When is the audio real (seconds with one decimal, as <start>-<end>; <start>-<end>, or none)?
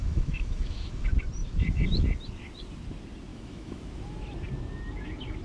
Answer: 0.9-3.3; 3.8-5.4